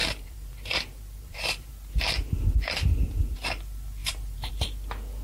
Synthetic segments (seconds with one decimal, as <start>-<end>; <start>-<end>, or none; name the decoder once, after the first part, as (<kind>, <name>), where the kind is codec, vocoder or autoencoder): 0.0-1.7 (vocoder, BigVGAN v2); 4.0-4.5